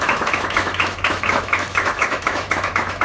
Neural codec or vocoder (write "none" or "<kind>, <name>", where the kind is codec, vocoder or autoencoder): autoencoder, DAC-VAE